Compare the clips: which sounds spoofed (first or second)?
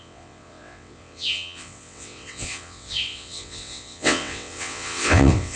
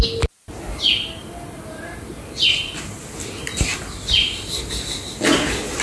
first